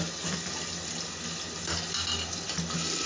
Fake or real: real